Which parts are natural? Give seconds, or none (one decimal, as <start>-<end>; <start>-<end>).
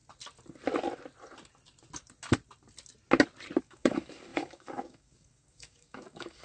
0.0-3.6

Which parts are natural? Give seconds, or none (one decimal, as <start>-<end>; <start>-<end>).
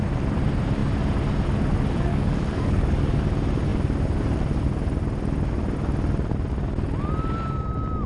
0.0-2.1; 3.2-8.1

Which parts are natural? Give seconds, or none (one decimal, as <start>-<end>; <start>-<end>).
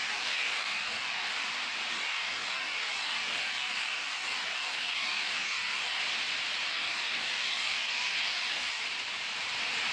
1.3-1.9; 6.0-6.7; 8.8-9.9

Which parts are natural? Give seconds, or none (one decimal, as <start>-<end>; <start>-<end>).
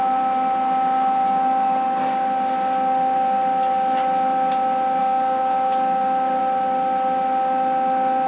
0.0-5.0; 6.4-8.3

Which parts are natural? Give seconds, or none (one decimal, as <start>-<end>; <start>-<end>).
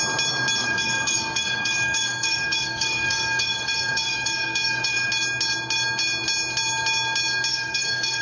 0.0-0.6; 5.1-7.5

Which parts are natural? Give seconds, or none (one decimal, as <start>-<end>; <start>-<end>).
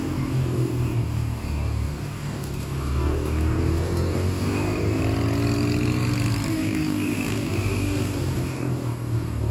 5.0-6.5